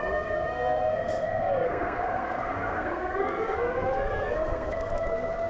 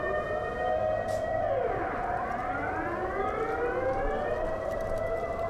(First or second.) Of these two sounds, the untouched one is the second